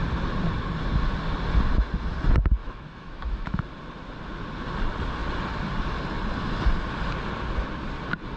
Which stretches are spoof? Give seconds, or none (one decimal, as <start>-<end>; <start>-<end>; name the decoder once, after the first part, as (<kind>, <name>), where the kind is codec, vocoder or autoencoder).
2.6-3.6 (autoencoder, DAC-VAE)